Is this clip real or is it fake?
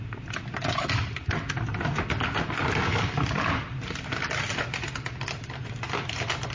fake